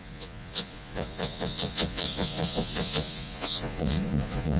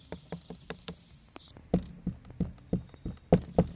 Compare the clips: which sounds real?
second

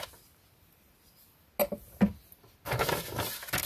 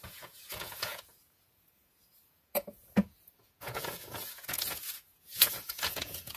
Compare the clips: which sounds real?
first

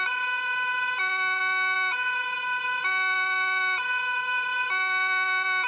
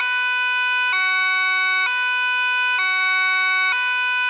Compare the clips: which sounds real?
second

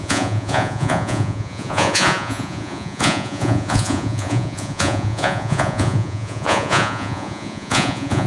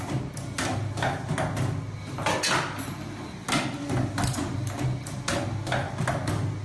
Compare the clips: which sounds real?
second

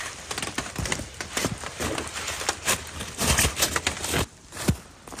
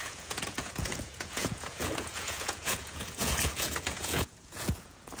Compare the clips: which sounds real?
first